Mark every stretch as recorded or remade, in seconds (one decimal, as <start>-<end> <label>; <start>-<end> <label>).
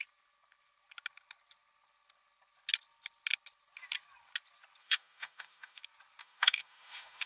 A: 0.0-4.8 recorded; 4.8-5.8 remade; 5.8-6.2 recorded; 6.2-7.3 remade